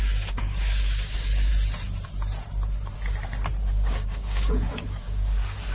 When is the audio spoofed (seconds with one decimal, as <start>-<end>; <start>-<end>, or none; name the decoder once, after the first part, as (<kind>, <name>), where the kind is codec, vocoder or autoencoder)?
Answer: 0.0-1.5 (codec, DAC); 3.7-5.7